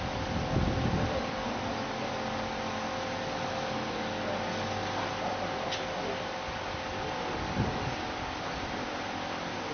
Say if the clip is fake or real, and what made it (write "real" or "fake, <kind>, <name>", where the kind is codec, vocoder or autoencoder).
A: real